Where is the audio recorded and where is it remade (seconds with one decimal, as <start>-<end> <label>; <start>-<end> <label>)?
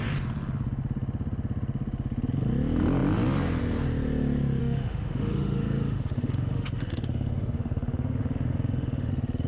0.0-4.6 recorded; 4.6-9.1 remade; 9.1-9.5 recorded